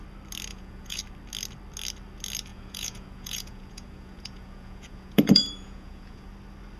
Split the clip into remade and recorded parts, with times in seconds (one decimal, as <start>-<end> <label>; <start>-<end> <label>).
0.0-0.5 recorded; 0.5-1.0 remade; 1.0-2.5 recorded; 2.5-6.3 remade; 6.3-6.8 recorded